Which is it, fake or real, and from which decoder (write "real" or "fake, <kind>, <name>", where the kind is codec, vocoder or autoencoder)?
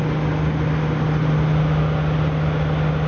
real